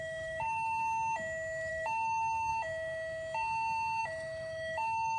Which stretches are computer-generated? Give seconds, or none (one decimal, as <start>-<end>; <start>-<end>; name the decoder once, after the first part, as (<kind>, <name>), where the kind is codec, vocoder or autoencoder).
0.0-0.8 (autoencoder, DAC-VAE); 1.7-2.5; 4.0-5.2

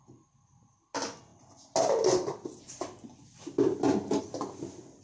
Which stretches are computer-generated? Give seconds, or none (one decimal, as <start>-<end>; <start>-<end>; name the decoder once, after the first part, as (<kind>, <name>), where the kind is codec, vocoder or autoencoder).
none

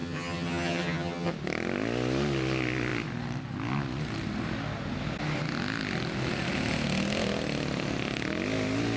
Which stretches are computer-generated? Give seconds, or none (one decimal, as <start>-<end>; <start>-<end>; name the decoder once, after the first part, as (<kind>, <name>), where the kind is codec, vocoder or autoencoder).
0.0-1.3 (vocoder, HiFi-GAN)

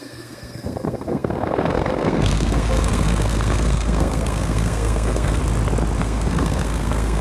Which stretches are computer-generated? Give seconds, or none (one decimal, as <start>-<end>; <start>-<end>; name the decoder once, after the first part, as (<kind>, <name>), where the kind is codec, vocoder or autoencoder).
0.0-5.4 (codec, SNAC); 6.0-7.2

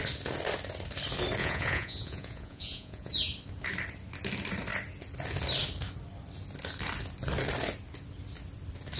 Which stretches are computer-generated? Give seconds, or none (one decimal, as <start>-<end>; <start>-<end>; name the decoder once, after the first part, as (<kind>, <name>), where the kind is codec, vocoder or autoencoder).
1.4-3.1 (vocoder, Vocos)